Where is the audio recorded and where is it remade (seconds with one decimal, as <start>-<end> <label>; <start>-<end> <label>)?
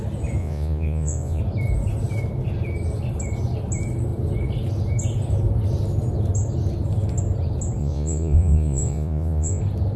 0.0-0.4 recorded; 0.4-1.4 remade; 1.4-7.8 recorded; 7.8-9.6 remade; 9.6-10.0 recorded